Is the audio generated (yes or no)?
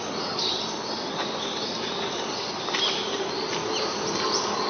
no